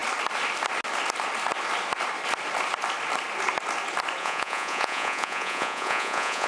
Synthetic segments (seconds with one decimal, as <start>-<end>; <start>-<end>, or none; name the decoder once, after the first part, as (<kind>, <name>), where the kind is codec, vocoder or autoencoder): 4.2-6.5 (vocoder, Vocos)